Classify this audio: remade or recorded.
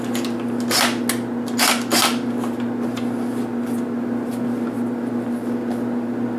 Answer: recorded